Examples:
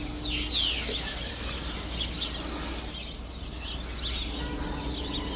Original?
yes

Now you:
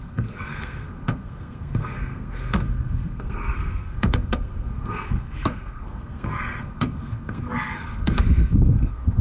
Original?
no